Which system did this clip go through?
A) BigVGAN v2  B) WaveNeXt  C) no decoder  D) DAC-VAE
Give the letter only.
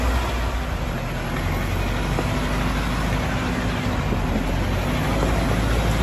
C